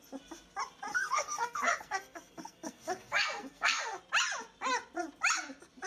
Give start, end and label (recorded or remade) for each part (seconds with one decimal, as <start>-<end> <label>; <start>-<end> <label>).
0.0-0.9 recorded; 0.9-4.0 remade; 4.0-5.9 recorded